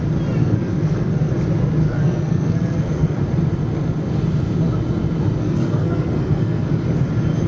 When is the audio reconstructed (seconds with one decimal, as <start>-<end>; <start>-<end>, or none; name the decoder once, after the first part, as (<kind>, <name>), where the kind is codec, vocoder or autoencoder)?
0.4-1.3 (codec, SNAC); 1.8-3.2; 5.4-6.7